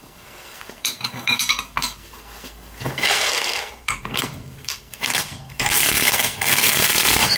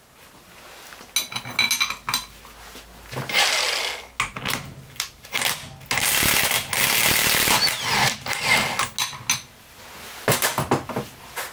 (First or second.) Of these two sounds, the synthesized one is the first